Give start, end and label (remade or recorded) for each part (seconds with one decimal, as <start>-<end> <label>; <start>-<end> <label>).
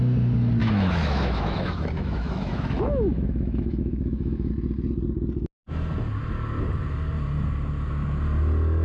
0.0-0.6 recorded; 0.6-4.5 remade; 4.5-8.8 recorded